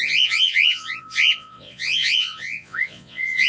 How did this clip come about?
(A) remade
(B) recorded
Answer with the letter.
A